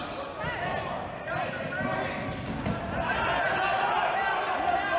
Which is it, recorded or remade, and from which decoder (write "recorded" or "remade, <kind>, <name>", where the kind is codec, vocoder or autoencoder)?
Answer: recorded